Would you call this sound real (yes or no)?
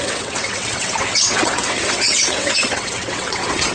no